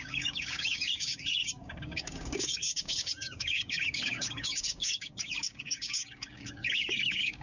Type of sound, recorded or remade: remade